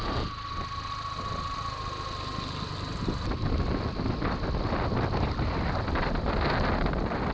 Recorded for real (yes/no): yes